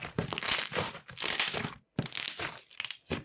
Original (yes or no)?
yes